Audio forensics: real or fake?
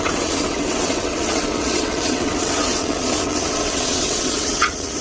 fake